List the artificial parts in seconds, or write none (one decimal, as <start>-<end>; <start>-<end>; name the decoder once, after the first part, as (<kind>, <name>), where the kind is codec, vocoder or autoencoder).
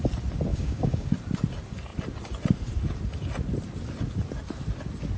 0.5-1.1 (codec, DAC)